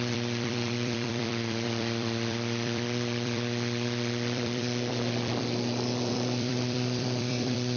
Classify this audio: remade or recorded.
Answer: remade